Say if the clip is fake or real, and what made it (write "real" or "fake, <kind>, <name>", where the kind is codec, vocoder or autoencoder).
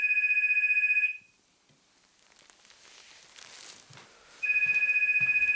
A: real